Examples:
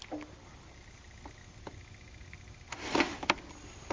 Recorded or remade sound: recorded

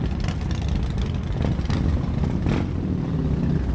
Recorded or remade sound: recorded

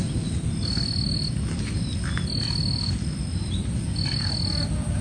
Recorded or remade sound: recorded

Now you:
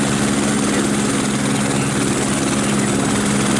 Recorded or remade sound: recorded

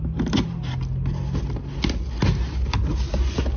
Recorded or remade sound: recorded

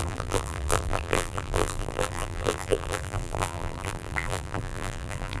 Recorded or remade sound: remade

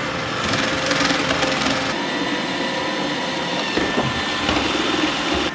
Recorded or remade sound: remade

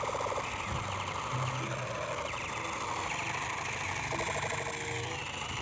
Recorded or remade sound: recorded